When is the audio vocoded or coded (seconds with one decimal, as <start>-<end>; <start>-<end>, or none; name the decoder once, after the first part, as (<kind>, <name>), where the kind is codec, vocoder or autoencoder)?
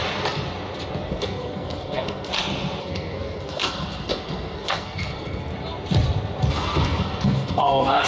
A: 1.1-2.3 (codec, SNAC); 2.8-5.5; 6.5-8.1